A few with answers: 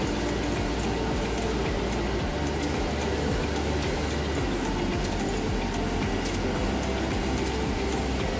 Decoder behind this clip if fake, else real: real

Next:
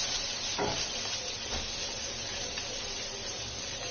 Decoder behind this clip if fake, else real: real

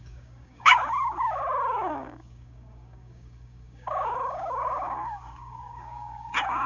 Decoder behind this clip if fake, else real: fake, codec, DAC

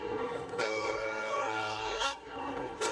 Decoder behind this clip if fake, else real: fake, codec, SNAC